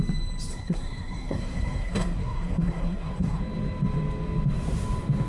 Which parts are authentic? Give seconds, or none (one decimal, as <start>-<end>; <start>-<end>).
0.0-0.5; 3.4-5.3